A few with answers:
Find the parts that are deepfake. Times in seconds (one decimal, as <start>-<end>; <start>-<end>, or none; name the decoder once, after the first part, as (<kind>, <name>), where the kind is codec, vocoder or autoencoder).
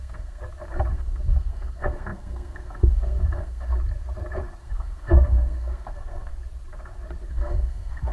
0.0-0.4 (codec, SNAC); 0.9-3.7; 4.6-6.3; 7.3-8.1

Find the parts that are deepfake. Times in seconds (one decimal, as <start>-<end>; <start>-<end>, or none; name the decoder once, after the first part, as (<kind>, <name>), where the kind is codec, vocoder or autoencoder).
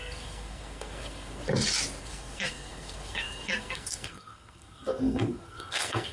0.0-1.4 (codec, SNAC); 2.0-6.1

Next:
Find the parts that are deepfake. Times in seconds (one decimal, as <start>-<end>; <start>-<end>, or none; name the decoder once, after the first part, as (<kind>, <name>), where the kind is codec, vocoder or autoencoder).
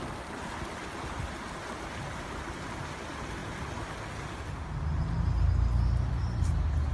none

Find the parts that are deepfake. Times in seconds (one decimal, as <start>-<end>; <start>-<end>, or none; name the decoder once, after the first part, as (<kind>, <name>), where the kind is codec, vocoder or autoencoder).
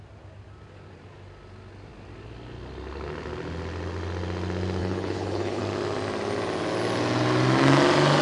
4.8-5.6 (codec, HILCodec)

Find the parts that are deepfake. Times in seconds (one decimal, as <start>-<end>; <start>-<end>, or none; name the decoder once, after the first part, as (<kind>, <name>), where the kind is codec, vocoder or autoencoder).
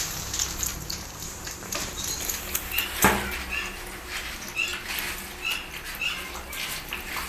0.7-2.0 (vocoder, BigVGAN v2)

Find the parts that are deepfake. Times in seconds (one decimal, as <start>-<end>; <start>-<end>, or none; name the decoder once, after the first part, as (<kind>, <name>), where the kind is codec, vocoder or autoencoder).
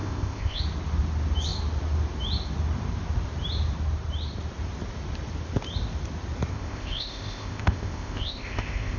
0.0-0.6 (codec, ZipCodec); 6.5-9.0